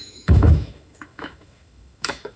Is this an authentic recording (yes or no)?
no